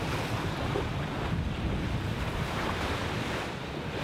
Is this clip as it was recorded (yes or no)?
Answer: no